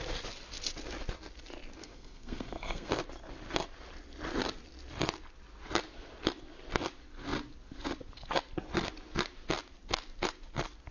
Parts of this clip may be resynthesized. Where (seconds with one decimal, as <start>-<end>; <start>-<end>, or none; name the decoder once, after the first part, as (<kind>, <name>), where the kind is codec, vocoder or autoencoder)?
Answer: 1.8-2.9 (codec, SNAC)